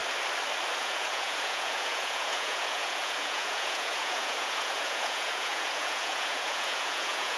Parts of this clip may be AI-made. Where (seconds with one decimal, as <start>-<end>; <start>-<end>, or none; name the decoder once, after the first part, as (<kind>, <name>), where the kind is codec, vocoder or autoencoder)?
0.8-7.4 (vocoder, Vocos)